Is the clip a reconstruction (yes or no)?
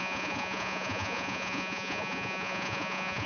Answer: yes